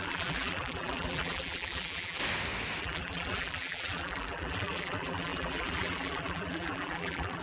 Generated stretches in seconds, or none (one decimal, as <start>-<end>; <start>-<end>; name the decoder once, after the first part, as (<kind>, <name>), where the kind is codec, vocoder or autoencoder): 0.0-2.2 (vocoder, BigVGAN v2); 2.8-7.4